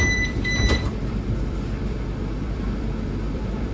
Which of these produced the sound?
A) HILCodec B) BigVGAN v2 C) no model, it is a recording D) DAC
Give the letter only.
B